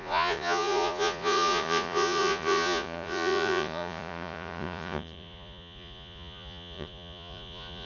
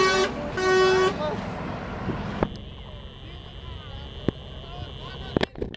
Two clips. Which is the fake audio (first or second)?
first